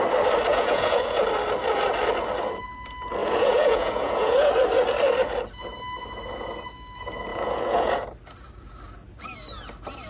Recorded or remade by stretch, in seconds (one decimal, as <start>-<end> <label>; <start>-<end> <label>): 0.0-0.5 recorded; 0.5-1.2 remade; 1.2-3.2 recorded; 3.2-4.5 remade; 4.5-7.3 recorded; 7.3-7.9 remade; 7.9-10.1 recorded